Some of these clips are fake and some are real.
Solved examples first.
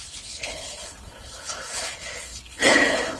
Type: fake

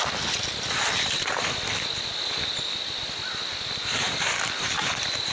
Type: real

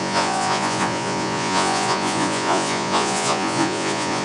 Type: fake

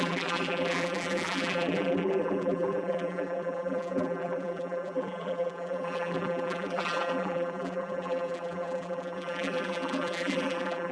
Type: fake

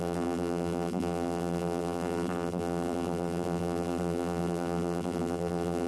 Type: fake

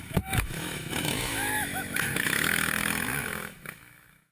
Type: fake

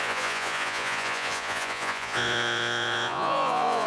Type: fake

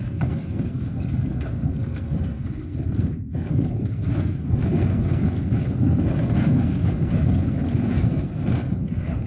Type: fake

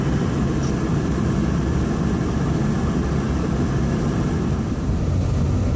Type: real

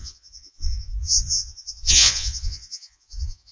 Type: fake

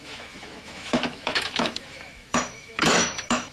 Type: fake